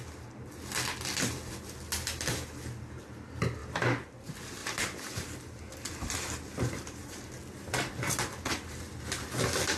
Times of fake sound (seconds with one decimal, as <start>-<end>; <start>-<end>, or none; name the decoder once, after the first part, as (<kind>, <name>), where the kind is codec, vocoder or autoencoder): 3.6-4.1 (vocoder, BigVGAN v2); 4.6-7.4